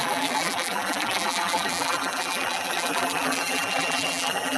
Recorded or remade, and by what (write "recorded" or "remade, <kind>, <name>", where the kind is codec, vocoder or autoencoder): remade, vocoder, BigVGAN v2